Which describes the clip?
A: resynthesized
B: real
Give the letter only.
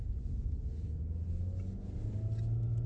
B